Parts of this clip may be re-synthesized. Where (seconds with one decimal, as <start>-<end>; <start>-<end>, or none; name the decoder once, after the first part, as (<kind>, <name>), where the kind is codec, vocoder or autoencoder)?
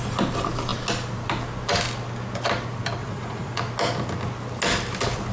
3.0-3.6 (vocoder, Vocos)